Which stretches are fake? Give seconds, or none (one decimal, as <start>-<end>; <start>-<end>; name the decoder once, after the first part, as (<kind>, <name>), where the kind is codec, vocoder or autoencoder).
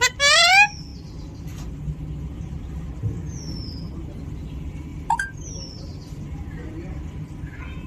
none